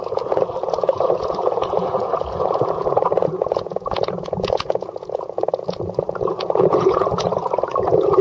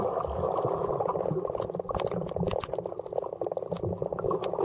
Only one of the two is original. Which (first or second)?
second